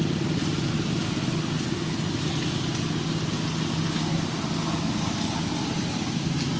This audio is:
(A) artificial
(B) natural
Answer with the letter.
B